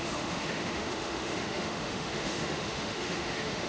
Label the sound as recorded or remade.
remade